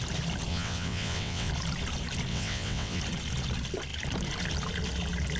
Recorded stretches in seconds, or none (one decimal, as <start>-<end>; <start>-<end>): 0.0-0.5; 1.5-2.3; 3.0-5.4